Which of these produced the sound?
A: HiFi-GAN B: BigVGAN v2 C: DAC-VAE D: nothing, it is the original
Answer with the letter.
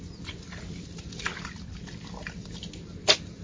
D